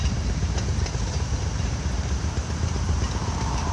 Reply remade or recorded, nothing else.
remade